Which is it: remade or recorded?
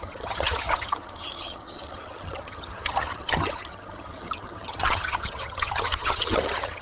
remade